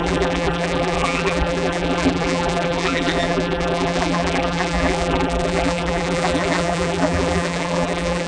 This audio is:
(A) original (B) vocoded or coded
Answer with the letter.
B